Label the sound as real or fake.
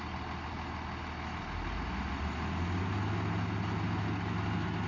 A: real